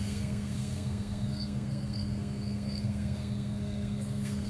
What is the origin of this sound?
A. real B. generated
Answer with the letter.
B